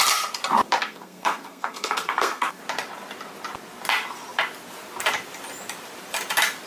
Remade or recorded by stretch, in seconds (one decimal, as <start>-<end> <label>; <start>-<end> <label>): 0.0-0.8 recorded; 0.8-2.6 remade; 2.6-6.7 recorded